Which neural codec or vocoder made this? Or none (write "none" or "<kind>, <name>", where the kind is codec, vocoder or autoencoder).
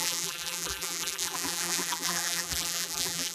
vocoder, BigVGAN v2